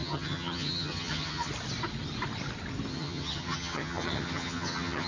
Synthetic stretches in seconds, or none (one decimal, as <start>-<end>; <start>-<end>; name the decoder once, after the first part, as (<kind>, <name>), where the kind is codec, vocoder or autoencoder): 0.0-1.5 (vocoder, HiFi-GAN); 2.9-5.1